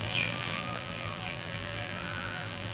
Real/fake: fake